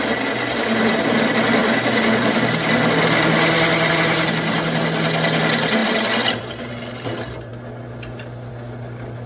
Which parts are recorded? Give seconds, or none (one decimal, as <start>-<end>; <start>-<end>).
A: 0.0-9.3

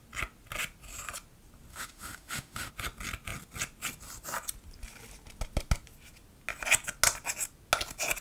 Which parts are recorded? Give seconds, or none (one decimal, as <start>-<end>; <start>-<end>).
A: 0.0-1.7; 2.7-8.2